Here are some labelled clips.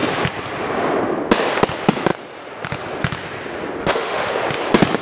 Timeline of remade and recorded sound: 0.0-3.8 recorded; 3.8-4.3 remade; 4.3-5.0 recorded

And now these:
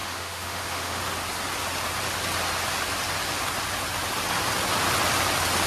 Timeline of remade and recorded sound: 0.0-1.0 remade; 1.0-5.7 recorded

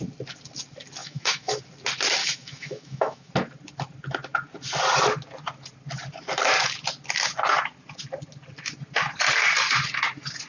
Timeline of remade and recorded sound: 0.0-1.0 recorded; 1.0-1.6 remade; 1.6-2.2 recorded; 2.2-3.3 remade; 3.3-10.5 recorded

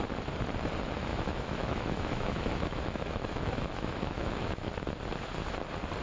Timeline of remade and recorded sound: 0.0-1.1 recorded; 1.1-4.7 remade; 4.7-6.0 recorded

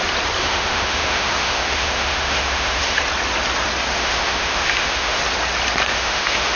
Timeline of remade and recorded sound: 0.0-0.4 recorded; 0.4-3.0 remade; 3.0-3.9 recorded; 3.9-5.2 remade; 5.2-5.9 recorded; 5.9-6.6 remade